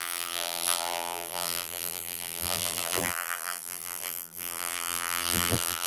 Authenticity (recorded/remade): remade